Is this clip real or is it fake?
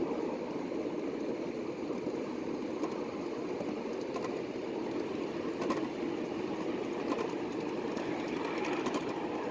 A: real